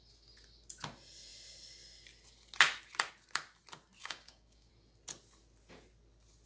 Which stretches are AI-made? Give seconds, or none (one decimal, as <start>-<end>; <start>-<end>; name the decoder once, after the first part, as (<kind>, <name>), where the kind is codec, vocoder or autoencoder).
4.0-4.7 (codec, DAC)